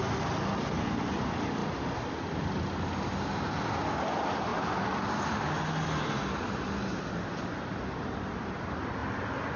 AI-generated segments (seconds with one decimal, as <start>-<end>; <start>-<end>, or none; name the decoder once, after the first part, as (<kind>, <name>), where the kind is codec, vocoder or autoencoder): none